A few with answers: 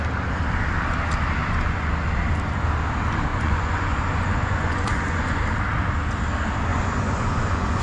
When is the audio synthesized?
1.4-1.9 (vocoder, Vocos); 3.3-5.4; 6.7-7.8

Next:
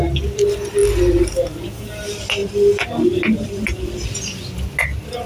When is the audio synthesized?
none